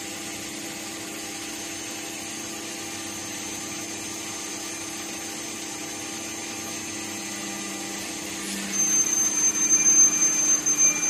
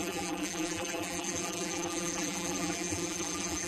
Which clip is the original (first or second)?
first